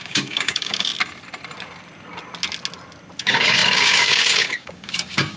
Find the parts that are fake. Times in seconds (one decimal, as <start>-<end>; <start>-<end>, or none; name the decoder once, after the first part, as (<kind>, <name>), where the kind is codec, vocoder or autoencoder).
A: 0.0-0.9 (codec, DAC); 3.2-5.4